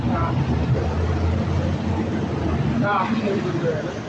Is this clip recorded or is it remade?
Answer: recorded